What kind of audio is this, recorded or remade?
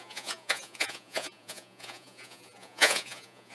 remade